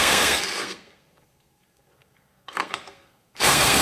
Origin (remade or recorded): remade